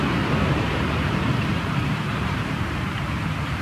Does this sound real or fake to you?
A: fake